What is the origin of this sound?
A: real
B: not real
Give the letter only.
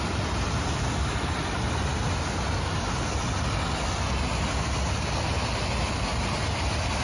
A